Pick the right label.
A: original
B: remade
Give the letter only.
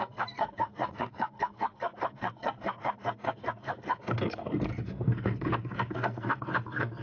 B